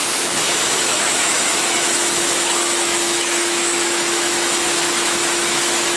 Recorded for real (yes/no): no